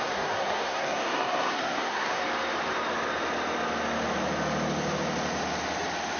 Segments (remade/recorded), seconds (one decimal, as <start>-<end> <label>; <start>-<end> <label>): 0.0-2.2 remade; 2.2-6.2 recorded